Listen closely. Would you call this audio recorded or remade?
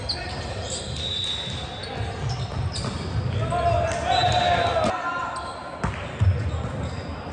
recorded